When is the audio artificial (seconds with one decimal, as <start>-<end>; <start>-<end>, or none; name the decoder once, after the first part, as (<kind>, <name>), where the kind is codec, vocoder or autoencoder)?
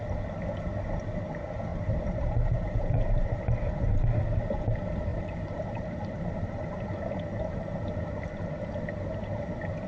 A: 1.7-4.1 (vocoder, BigVGAN v2); 5.1-9.2